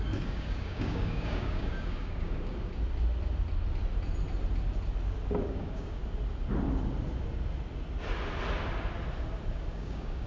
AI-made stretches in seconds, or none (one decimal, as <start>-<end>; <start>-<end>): 0.0-2.7; 5.5-6.0; 9.7-10.3